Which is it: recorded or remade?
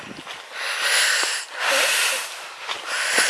recorded